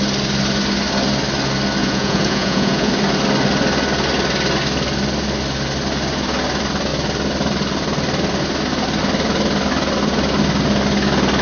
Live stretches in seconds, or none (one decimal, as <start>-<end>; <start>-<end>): 0.0-1.8; 2.9-11.4